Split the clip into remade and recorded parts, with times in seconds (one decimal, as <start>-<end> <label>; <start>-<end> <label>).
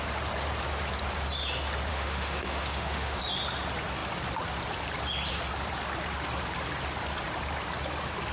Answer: 0.0-1.9 recorded; 1.9-3.2 remade; 3.2-8.3 recorded